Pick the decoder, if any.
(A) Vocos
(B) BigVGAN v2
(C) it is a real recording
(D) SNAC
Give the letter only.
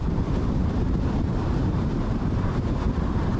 B